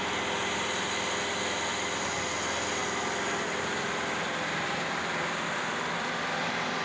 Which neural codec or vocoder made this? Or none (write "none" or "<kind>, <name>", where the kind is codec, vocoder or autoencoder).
none